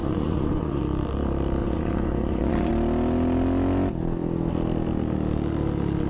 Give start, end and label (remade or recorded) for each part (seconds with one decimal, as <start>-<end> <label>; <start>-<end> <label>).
0.0-0.8 remade; 0.8-1.6 recorded; 1.6-2.7 remade; 2.7-6.1 recorded